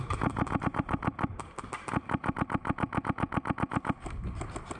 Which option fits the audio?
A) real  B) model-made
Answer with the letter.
A